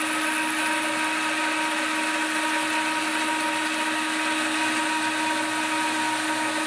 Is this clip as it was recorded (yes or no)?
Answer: yes